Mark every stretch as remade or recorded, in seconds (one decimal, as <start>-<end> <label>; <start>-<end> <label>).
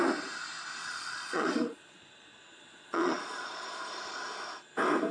0.0-0.8 recorded; 0.8-3.9 remade; 3.9-5.1 recorded